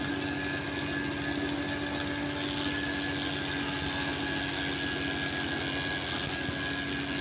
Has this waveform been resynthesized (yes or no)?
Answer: no